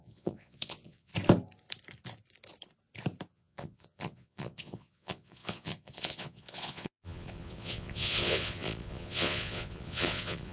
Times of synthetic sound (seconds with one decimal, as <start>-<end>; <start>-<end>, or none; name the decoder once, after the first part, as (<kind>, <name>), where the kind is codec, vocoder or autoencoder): 0.0-1.1 (vocoder, Vocos); 3.3-10.5